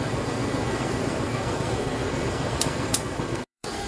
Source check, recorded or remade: remade